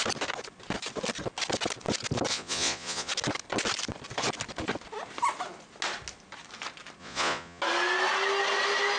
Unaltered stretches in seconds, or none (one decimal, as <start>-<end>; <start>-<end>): 0.0-2.3; 3.1-7.0; 7.6-9.0